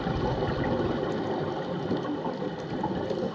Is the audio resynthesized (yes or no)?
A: no